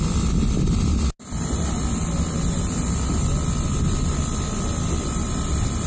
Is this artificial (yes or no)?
no